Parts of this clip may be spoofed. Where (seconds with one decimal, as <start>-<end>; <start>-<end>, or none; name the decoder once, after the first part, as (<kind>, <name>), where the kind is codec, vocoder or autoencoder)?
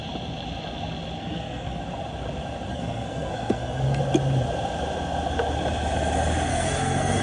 1.2-1.8 (codec, SNAC); 2.7-4.0; 6.5-7.2